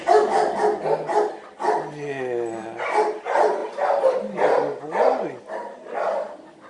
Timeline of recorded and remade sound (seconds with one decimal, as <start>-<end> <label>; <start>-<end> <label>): 0.0-6.7 recorded